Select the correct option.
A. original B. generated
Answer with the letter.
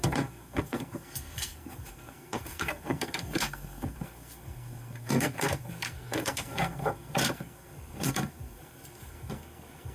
B